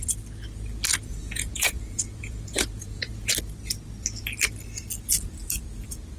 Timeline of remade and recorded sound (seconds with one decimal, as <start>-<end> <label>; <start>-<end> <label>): 0.0-0.9 recorded; 0.9-3.3 remade; 3.3-6.2 recorded